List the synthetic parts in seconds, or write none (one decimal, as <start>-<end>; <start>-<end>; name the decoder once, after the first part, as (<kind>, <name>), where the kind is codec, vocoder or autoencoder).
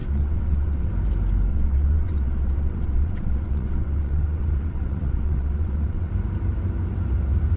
0.0-0.9 (vocoder, WaveNeXt); 1.5-6.1